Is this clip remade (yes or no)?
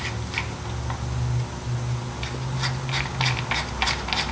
no